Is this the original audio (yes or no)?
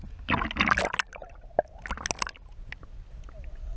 yes